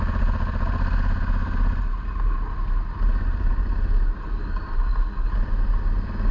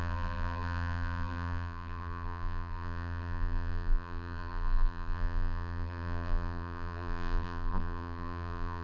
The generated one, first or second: second